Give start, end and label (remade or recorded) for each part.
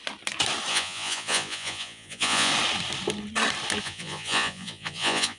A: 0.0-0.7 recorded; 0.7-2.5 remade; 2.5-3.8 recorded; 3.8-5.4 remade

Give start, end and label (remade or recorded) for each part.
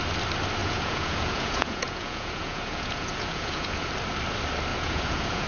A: 0.0-0.6 recorded; 0.6-3.9 remade; 3.9-4.7 recorded; 4.7-5.5 remade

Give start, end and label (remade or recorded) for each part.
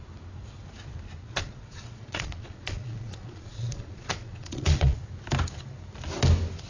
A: 0.0-1.2 recorded; 1.2-5.0 remade; 5.0-6.7 recorded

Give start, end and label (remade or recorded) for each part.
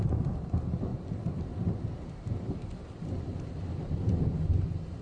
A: 0.0-5.0 recorded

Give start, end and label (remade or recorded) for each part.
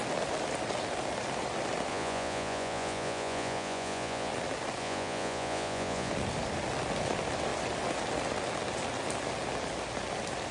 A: 0.0-1.9 recorded; 1.9-4.3 remade; 4.3-4.8 recorded; 4.8-6.1 remade; 6.1-10.5 recorded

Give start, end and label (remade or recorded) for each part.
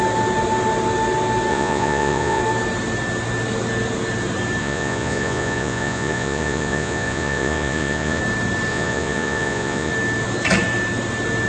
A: 0.0-1.5 recorded; 1.5-2.4 remade; 2.4-4.6 recorded; 4.6-8.2 remade; 8.2-8.7 recorded; 8.7-9.9 remade; 9.9-11.5 recorded